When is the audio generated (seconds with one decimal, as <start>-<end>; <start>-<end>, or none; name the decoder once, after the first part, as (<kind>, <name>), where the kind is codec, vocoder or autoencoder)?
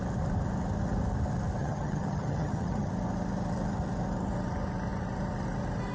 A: 1.6-2.9 (vocoder, HiFi-GAN)